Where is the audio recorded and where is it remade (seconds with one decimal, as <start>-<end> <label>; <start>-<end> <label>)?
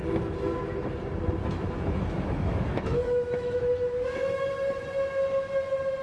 0.0-1.4 recorded; 1.4-4.5 remade; 4.5-6.0 recorded